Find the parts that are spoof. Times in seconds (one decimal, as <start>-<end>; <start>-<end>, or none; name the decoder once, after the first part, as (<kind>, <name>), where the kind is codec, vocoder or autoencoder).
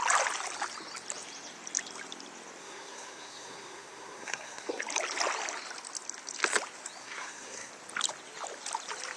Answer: 2.6-4.8 (codec, SNAC); 7.0-7.7